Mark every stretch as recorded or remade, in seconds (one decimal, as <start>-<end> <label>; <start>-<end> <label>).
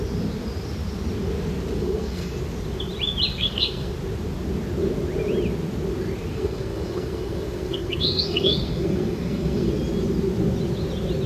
0.0-1.8 recorded; 1.8-2.4 remade; 2.4-3.3 recorded; 3.3-3.9 remade; 3.9-6.3 recorded; 6.3-9.7 remade; 9.7-11.3 recorded